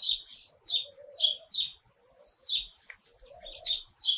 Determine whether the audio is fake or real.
real